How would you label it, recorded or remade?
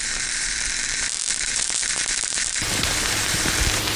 remade